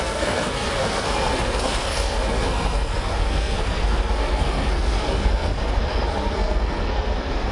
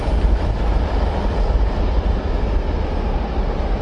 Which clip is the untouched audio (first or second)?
second